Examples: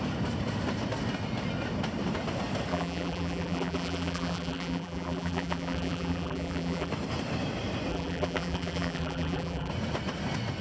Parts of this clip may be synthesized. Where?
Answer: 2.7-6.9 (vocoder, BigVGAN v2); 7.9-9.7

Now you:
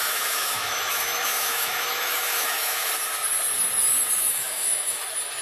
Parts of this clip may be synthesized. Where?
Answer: 0.0-2.9 (autoencoder, DAC-VAE); 4.2-5.0

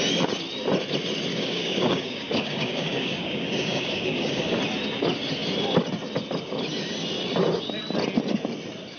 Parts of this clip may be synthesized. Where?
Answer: 1.3-4.6 (codec, DAC)

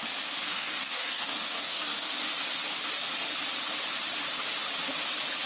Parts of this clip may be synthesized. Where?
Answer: 0.5-2.1 (codec, DAC)

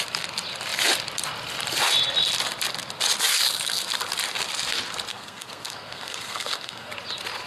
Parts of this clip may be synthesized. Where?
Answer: 5.1-6.9 (codec, SNAC)

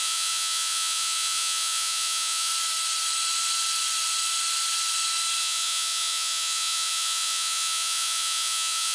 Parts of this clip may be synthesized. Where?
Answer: 0.0-2.5 (vocoder, Vocos); 5.4-8.9

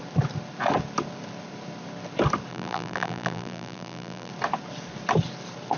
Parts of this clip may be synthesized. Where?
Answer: 2.5-4.3 (vocoder, BigVGAN v2)